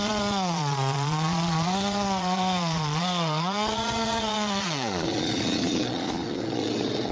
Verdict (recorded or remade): remade